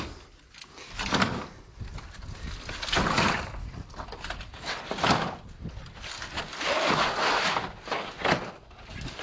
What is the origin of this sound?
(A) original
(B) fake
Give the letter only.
A